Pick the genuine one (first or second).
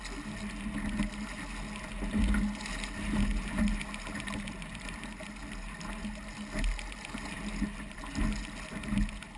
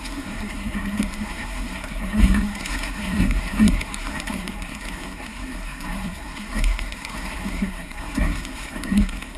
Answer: first